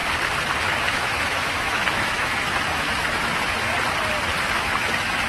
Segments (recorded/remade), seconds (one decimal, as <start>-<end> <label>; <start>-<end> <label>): 0.0-0.6 recorded; 0.6-3.7 remade; 3.7-4.4 recorded; 4.4-5.3 remade